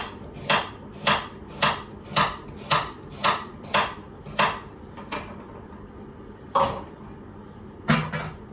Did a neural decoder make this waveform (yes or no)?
no